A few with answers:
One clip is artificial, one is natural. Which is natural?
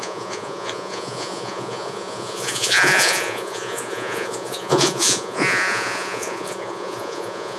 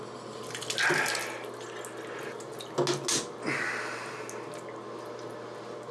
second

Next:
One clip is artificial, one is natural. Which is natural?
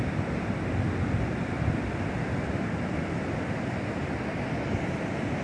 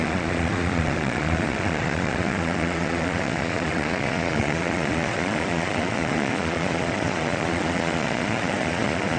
first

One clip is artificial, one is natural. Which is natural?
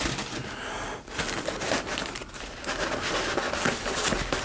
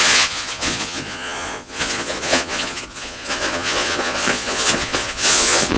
first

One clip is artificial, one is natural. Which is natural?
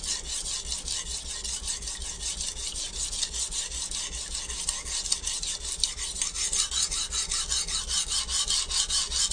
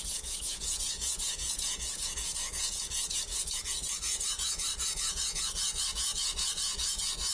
first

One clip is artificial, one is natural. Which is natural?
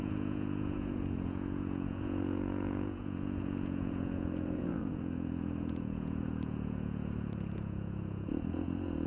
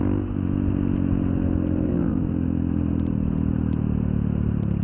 second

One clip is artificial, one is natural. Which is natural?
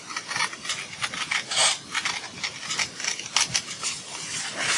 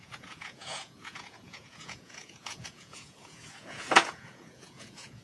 first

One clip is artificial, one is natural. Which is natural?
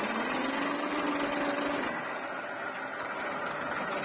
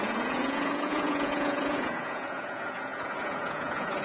first